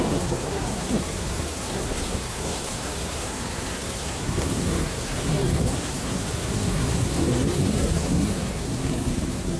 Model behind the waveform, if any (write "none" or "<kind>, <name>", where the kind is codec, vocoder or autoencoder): codec, SNAC